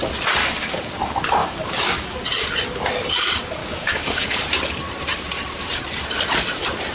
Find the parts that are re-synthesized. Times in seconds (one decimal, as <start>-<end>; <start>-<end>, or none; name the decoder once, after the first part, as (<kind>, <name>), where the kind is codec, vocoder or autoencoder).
0.4-1.0 (codec, DAC); 1.4-2.2; 3.6-4.2